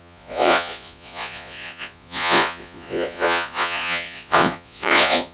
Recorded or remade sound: remade